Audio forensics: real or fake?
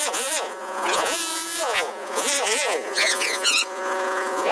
fake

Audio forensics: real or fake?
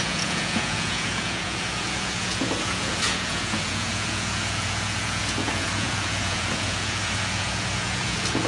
fake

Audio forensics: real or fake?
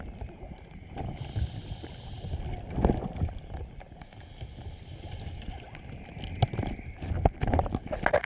real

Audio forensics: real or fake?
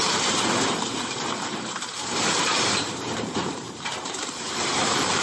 fake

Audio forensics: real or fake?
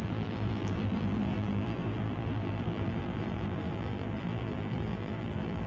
fake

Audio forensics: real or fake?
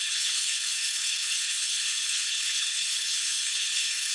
fake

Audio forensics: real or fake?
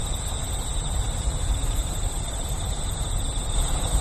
fake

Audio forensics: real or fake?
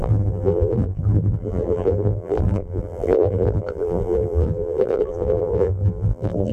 fake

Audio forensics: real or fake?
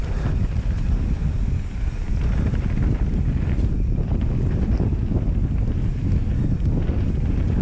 real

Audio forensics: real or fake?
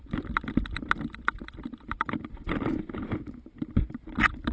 real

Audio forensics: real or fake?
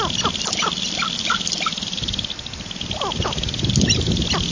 real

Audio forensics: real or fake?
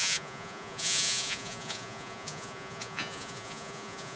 fake